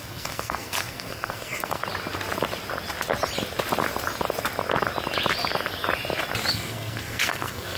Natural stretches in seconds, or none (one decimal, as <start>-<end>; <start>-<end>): 1.8-6.5